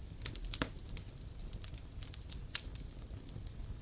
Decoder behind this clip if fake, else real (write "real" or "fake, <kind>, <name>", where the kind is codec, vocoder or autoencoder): real